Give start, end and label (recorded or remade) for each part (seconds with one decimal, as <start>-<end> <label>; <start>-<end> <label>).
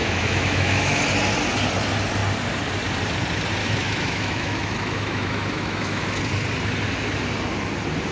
0.0-1.0 remade; 1.0-3.6 recorded; 3.6-6.2 remade; 6.2-8.1 recorded